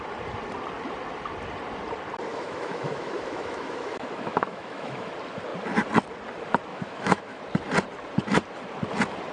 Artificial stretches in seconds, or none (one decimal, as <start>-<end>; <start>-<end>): 2.3-5.1; 6.7-7.4